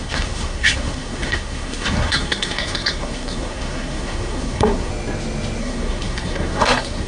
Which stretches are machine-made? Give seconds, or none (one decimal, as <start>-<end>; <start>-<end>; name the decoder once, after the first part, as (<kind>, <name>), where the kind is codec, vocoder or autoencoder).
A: 0.0-4.9 (codec, SNAC); 5.6-7.1